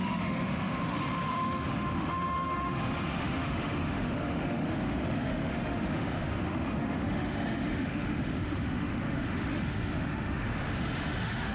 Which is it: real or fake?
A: fake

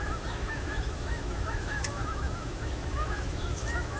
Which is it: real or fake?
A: fake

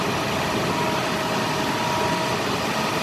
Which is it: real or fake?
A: real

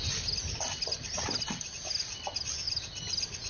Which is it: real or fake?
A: real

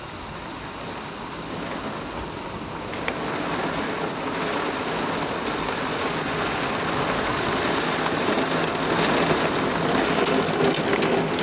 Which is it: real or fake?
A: real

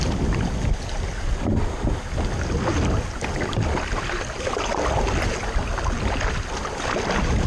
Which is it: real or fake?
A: real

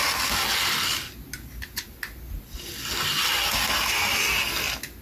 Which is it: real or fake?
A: real